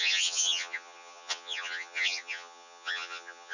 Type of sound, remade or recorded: remade